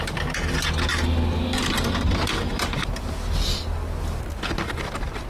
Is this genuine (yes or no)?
yes